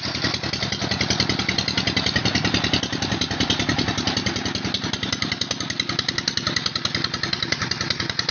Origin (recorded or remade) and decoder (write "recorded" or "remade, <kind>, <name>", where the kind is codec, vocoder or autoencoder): recorded